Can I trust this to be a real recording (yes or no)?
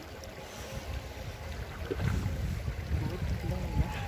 yes